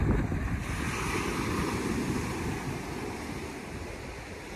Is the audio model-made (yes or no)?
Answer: no